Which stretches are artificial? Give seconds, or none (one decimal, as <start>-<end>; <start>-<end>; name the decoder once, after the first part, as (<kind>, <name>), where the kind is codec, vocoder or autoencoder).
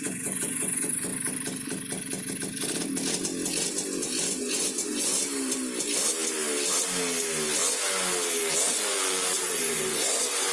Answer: 0.0-1.1 (vocoder, Vocos); 4.0-5.1; 8.7-10.5